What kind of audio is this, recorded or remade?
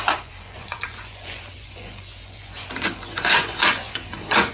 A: remade